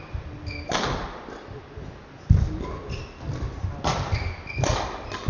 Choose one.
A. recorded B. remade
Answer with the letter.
A